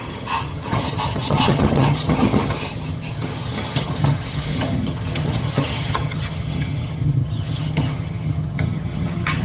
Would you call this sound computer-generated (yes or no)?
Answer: yes